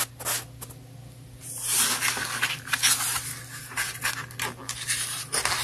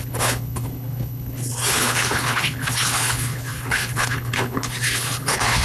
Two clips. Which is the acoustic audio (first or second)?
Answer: first